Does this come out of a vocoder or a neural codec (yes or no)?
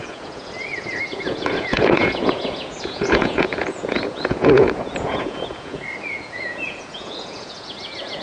yes